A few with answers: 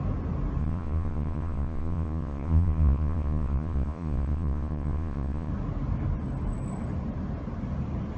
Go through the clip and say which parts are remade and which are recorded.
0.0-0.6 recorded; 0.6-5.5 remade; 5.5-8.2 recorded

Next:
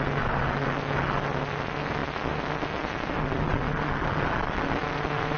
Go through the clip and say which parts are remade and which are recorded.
0.0-5.4 recorded

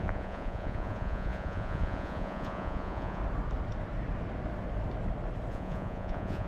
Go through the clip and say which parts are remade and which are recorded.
0.0-3.2 remade; 3.2-5.5 recorded; 5.5-6.5 remade

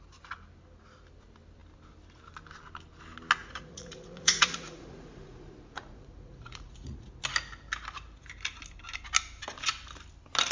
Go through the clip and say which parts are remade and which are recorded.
0.0-3.4 recorded; 3.4-7.1 remade; 7.1-10.5 recorded

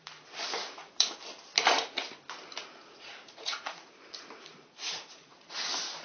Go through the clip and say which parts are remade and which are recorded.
0.0-0.6 recorded; 0.6-1.2 remade; 1.2-2.6 recorded; 2.6-5.5 remade; 5.5-6.0 recorded